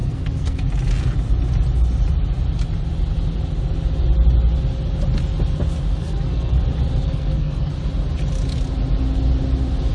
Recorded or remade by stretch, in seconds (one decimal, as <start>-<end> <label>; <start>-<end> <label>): 0.0-0.7 remade; 0.7-5.9 recorded; 5.9-6.5 remade; 6.5-7.0 recorded; 7.0-7.7 remade; 7.7-9.9 recorded